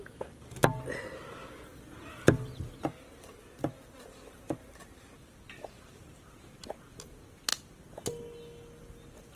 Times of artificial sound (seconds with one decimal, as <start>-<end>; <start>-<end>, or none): none